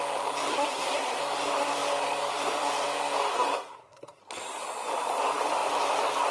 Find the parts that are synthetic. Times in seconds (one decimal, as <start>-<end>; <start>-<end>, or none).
0.5-1.2; 3.3-4.2